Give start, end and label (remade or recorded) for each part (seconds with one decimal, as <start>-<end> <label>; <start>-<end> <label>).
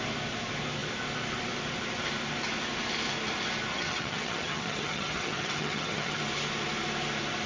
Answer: 0.0-3.7 recorded; 3.7-6.2 remade; 6.2-7.5 recorded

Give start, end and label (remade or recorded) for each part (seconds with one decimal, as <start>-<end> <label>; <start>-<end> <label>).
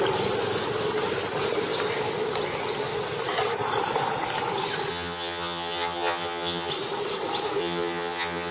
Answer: 0.0-4.9 recorded; 4.9-6.7 remade; 6.7-7.6 recorded; 7.6-8.5 remade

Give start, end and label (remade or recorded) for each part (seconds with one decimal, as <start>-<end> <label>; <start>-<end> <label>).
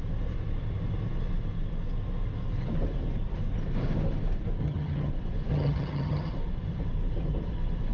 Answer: 0.0-4.6 recorded; 4.6-5.1 remade; 5.1-5.5 recorded; 5.5-6.3 remade; 6.3-7.9 recorded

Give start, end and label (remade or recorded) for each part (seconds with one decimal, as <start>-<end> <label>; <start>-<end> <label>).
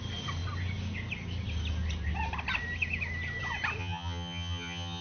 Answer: 0.0-3.8 recorded; 3.8-5.0 remade